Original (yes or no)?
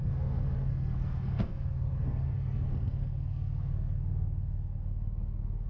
no